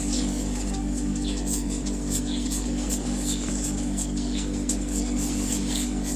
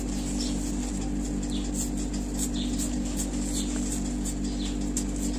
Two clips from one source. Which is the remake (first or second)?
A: first